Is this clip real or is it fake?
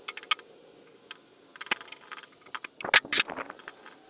real